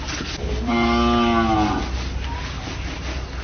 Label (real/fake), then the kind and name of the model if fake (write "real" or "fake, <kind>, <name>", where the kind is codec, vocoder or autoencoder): real